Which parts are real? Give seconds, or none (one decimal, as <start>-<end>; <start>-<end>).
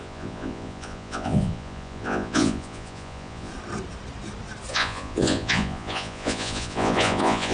3.5-4.7